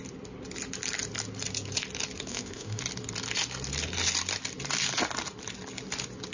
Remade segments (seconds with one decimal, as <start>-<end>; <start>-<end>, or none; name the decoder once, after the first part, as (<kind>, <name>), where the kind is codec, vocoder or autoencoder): 2.3-2.8 (autoencoder, DAC-VAE)